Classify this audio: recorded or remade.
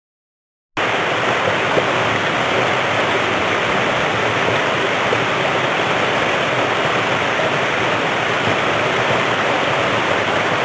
recorded